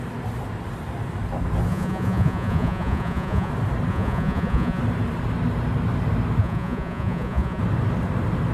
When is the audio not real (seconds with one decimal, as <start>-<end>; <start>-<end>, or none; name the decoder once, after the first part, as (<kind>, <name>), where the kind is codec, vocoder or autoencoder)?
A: 1.7-3.5 (vocoder, Vocos); 3.9-4.8; 6.4-7.6